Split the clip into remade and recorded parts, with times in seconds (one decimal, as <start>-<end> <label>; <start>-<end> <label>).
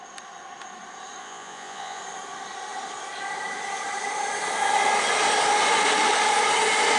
0.0-1.2 recorded; 1.2-2.0 remade; 2.0-7.0 recorded